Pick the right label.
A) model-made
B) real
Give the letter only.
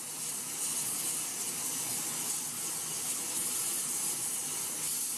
B